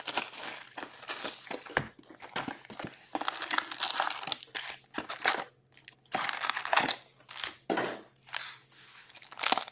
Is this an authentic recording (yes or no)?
yes